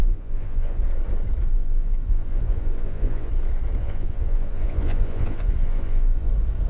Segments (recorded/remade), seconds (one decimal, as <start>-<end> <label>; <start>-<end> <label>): 0.0-0.8 remade; 0.8-1.5 recorded; 1.5-3.3 remade; 3.3-3.8 recorded; 3.8-6.3 remade; 6.3-6.7 recorded